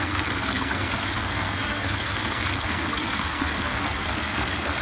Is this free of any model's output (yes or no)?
no